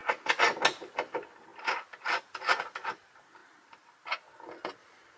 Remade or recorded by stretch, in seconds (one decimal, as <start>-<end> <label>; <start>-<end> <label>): 0.0-5.2 recorded